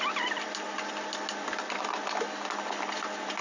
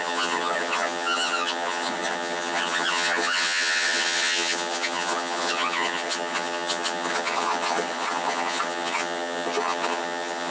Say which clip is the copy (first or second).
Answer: second